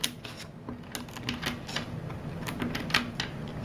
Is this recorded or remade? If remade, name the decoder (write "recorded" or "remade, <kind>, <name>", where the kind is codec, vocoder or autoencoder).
recorded